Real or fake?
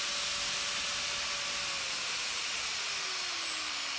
real